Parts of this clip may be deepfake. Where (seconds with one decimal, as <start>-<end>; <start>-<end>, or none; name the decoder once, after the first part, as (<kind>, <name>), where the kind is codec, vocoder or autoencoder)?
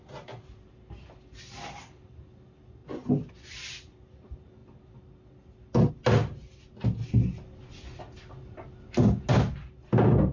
none